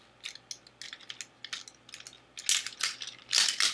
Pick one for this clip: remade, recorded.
recorded